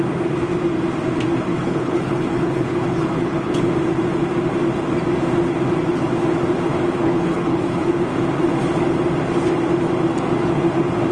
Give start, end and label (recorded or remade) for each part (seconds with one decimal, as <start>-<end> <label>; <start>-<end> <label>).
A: 0.0-1.5 recorded; 1.5-3.7 remade; 3.7-7.0 recorded; 7.0-7.9 remade; 7.9-11.1 recorded